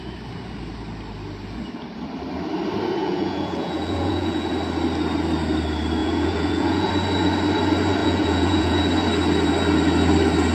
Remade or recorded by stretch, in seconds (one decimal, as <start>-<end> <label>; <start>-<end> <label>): 0.0-3.0 recorded; 3.0-4.5 remade; 4.5-6.0 recorded; 6.0-6.9 remade; 6.9-8.0 recorded; 8.0-8.8 remade; 8.8-10.5 recorded